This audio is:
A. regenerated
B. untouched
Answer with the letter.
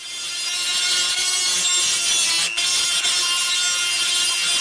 B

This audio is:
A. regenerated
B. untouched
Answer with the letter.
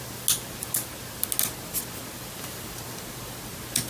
B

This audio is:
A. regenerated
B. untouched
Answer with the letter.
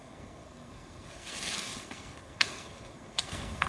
A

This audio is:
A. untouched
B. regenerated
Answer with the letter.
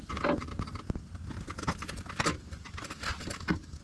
A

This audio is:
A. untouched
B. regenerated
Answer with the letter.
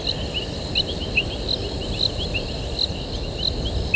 A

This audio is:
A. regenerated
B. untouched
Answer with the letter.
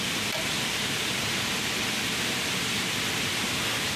A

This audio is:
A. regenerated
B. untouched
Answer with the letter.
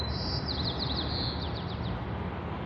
B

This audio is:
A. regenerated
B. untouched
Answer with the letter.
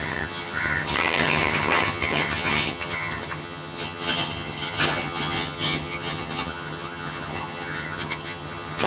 A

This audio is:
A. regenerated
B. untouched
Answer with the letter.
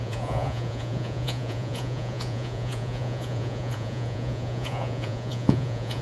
A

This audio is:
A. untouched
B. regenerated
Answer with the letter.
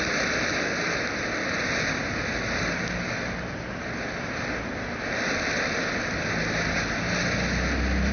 A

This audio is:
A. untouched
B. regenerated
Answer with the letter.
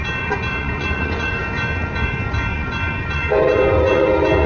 B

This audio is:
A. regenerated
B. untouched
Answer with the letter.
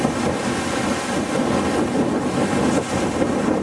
B